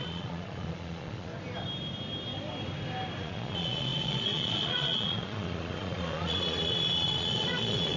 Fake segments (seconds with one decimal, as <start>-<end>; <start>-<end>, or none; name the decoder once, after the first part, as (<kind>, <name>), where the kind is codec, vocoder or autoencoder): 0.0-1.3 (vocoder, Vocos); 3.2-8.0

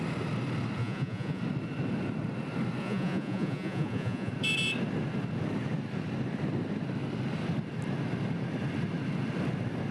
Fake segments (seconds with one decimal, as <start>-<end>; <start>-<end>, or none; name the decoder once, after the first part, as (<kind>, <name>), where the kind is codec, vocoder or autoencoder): 0.8-1.4 (vocoder, Vocos); 2.8-4.3

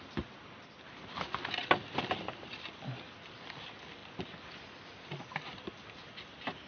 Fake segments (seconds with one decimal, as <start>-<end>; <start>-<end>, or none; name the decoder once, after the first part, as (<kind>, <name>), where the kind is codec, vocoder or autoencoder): none